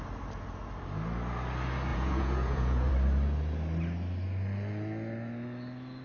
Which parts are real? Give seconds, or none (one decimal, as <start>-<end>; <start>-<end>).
0.0-1.9; 2.9-6.0